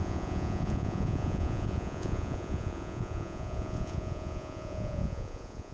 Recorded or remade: remade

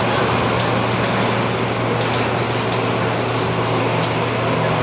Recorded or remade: recorded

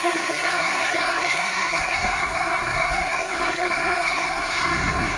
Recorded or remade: remade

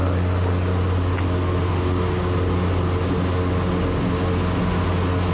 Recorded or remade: recorded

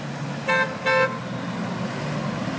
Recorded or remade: recorded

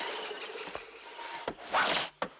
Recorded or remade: recorded